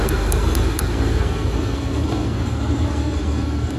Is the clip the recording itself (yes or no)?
no